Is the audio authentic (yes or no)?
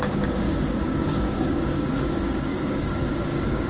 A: no